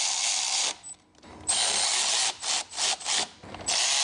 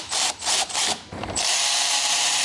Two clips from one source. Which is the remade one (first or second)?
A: second